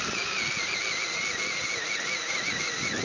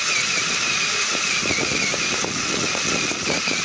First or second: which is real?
first